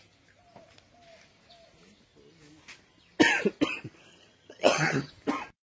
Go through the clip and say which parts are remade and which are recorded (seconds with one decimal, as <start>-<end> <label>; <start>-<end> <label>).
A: 0.0-4.1 recorded; 4.1-5.1 remade; 5.1-5.7 recorded